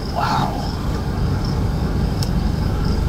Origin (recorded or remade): remade